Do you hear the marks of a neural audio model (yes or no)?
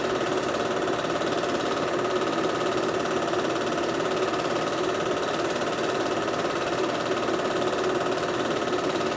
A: no